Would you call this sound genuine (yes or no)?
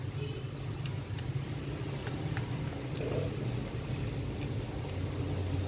yes